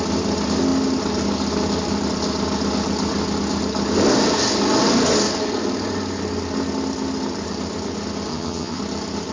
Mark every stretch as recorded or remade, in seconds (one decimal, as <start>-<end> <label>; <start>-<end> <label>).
0.0-8.3 recorded; 8.3-8.8 remade; 8.8-9.3 recorded